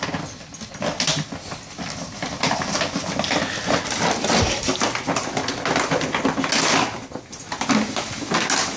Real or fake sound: real